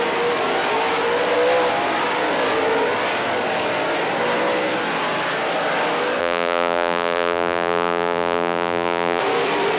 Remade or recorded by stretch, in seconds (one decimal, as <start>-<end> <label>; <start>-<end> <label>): 0.0-6.2 recorded; 6.2-9.2 remade; 9.2-9.8 recorded